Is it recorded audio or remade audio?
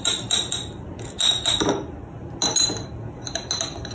recorded